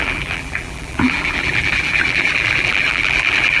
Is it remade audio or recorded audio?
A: remade